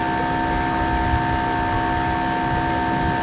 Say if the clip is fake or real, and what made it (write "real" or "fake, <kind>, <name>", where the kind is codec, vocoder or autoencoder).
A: real